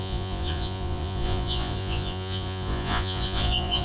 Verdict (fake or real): fake